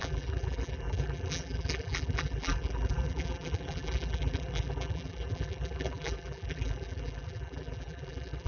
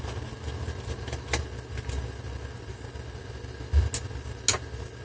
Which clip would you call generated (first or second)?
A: first